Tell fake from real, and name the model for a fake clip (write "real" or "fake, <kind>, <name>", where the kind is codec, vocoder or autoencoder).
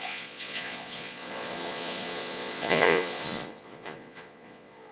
fake, vocoder, Vocos